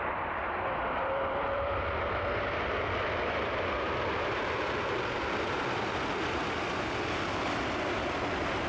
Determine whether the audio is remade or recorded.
remade